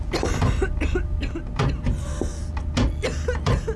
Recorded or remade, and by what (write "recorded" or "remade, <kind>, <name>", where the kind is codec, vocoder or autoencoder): recorded